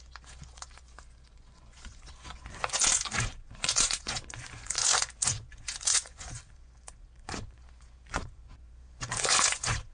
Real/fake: fake